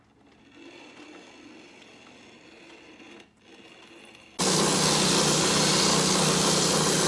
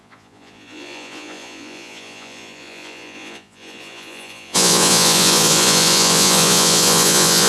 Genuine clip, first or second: first